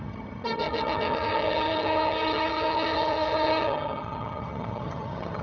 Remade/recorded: remade